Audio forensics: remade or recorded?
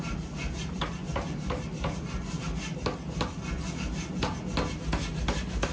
recorded